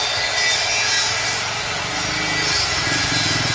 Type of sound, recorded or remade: recorded